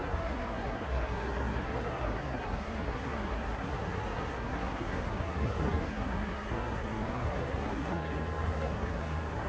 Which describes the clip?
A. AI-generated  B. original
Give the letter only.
A